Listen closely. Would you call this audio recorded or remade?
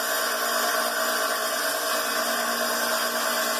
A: recorded